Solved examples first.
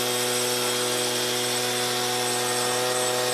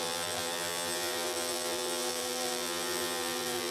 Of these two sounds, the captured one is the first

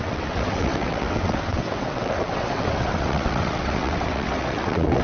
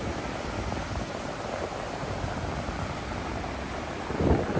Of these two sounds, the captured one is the second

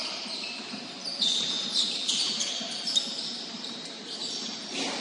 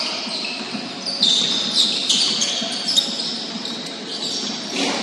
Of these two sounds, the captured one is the second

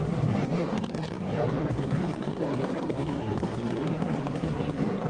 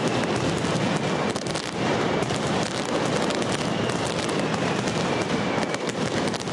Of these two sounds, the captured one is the second